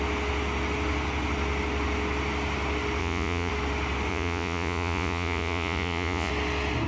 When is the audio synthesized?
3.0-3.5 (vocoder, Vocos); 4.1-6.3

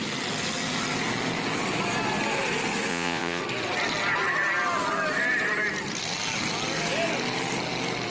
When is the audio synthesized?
2.9-3.4 (vocoder, Vocos)

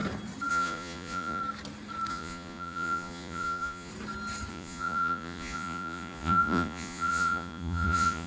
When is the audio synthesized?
0.5-1.4 (vocoder, Vocos); 2.1-3.9; 4.5-8.3

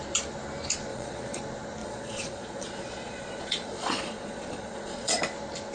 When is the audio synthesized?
0.9-1.4 (vocoder, Vocos); 1.8-5.2

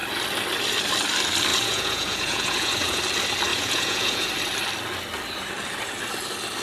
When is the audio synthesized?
1.5-3.0 (vocoder, Vocos); 3.5-4.3

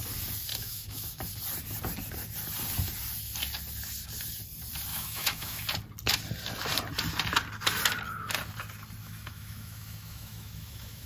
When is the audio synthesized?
0.5-1.2 (autoencoder, DAC-VAE); 4.9-5.6; 9.0-11.1

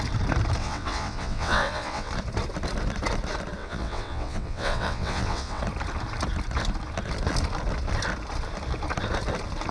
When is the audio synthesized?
0.6-2.1 (vocoder, WaveNeXt); 3.6-5.6